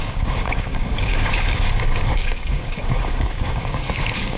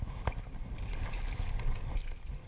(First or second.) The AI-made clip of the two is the first